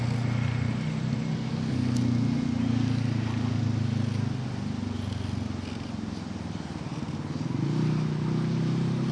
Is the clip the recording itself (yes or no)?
yes